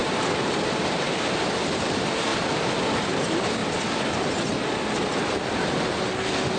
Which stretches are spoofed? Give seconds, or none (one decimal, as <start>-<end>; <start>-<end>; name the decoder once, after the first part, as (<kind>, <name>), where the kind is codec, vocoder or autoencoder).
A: 0.0-1.1 (vocoder, BigVGAN v2)